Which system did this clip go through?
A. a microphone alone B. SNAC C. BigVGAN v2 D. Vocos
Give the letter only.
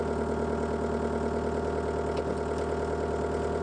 A